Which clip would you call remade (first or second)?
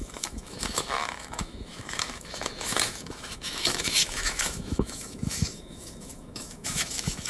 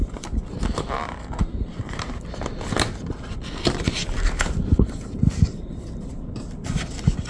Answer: first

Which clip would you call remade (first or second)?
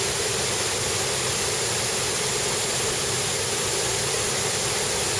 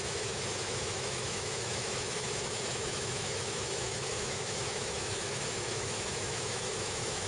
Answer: second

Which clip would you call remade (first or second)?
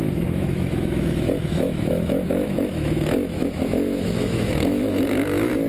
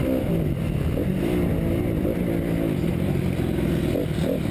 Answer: first